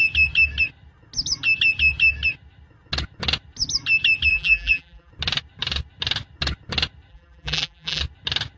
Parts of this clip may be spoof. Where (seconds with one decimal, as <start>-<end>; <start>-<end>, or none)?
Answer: 4.3-5.1; 7.1-8.0